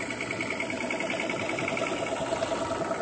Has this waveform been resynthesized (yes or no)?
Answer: no